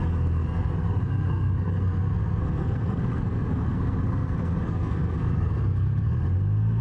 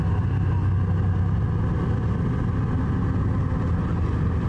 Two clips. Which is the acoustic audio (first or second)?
second